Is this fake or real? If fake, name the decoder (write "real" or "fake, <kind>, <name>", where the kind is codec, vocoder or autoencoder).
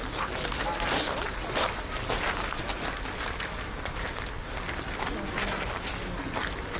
real